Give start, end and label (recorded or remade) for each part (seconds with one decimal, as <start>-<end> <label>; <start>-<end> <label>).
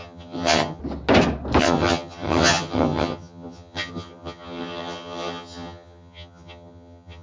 0.0-0.8 remade; 0.8-1.6 recorded; 1.6-7.2 remade